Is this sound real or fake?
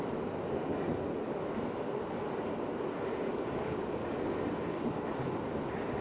real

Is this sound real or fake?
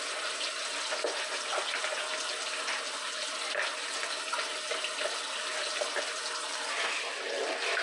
real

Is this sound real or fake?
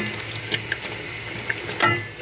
real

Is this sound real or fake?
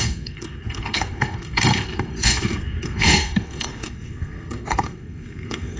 fake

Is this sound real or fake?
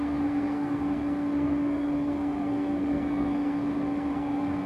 fake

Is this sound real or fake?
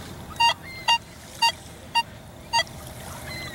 fake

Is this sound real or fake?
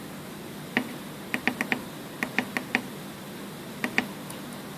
fake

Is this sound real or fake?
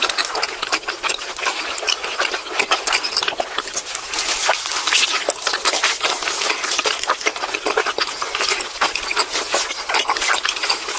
real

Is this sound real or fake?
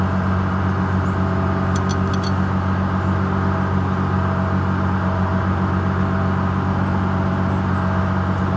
real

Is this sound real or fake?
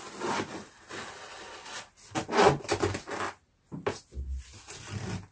real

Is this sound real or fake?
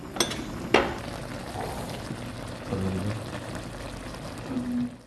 real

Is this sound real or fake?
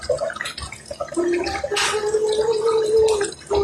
real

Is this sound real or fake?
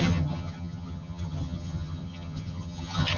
fake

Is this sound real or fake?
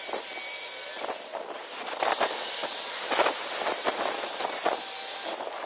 real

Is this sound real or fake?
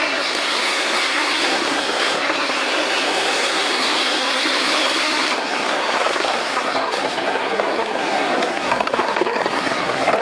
fake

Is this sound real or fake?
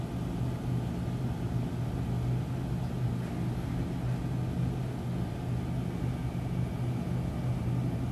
real